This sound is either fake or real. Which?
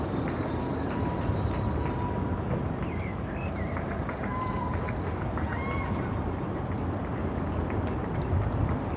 real